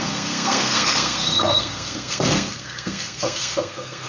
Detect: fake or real fake